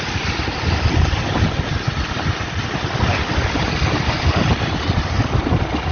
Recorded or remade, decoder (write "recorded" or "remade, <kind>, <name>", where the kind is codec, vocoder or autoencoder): recorded